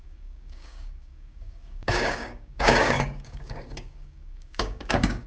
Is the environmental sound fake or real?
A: fake